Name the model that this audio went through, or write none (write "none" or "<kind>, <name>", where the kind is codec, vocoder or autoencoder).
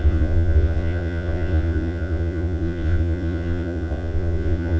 vocoder, Vocos